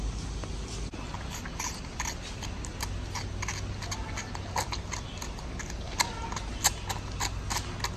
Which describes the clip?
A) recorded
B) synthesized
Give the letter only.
A